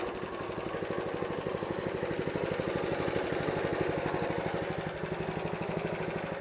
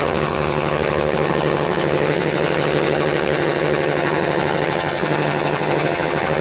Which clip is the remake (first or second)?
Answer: second